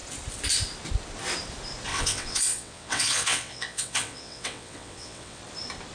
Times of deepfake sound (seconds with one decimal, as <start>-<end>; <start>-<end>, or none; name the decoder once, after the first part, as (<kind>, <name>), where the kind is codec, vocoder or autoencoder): 1.9-5.4 (vocoder, WaveNeXt)